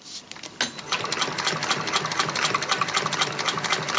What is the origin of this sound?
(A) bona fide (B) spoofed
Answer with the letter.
A